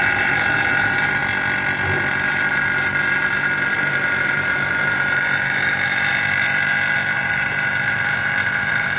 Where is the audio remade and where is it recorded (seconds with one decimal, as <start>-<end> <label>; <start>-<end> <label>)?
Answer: 0.0-1.2 remade; 1.2-2.1 recorded; 2.1-9.0 remade